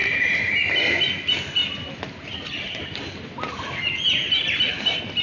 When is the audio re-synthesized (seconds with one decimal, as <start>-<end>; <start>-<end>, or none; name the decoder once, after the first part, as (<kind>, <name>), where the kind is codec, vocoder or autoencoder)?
none